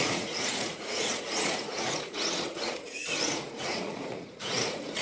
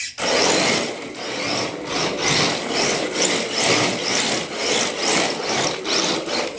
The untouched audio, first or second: second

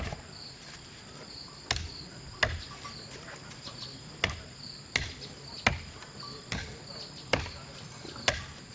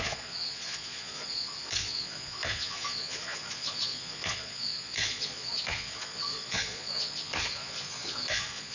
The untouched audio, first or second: first